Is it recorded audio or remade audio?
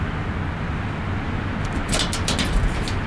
recorded